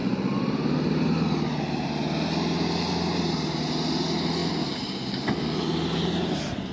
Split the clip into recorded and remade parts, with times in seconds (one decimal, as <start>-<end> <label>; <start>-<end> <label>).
0.0-6.7 recorded